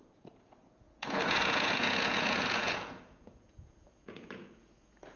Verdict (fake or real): fake